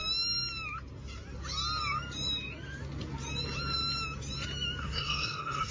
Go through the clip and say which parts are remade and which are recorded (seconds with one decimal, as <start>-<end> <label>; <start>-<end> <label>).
0.0-4.8 recorded; 4.8-5.7 remade